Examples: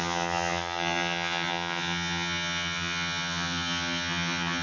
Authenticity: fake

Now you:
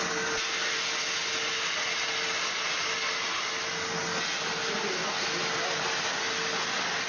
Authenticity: real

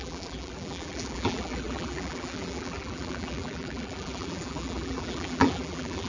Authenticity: fake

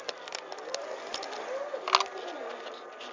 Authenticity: real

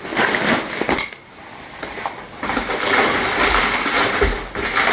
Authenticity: real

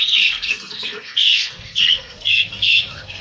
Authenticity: fake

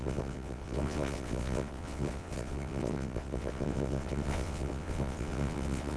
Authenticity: fake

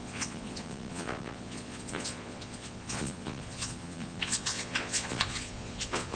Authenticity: fake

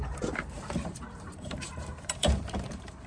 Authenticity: fake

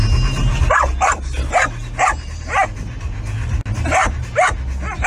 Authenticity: real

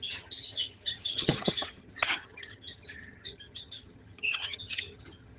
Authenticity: fake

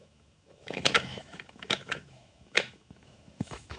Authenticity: fake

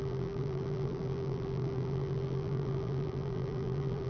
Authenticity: fake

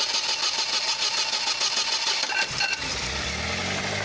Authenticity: real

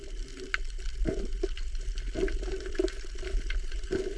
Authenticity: real